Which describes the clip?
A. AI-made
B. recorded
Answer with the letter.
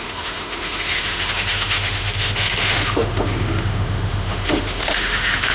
A